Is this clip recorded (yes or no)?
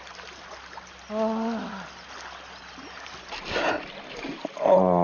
yes